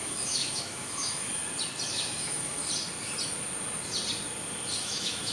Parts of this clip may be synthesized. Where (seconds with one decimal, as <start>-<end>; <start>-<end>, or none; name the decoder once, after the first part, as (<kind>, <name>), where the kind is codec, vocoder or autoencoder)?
0.0-1.4 (autoencoder, DAC-VAE); 1.9-2.6; 4.8-5.3